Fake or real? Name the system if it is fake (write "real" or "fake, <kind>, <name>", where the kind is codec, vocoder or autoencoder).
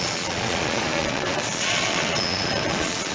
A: fake, vocoder, Vocos